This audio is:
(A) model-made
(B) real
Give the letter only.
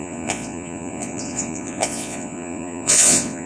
A